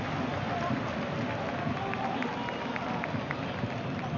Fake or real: real